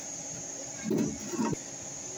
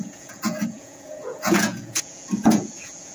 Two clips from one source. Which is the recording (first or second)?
first